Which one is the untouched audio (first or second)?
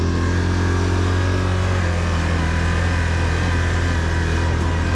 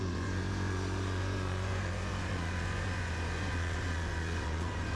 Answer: first